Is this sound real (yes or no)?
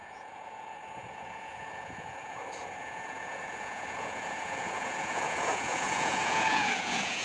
no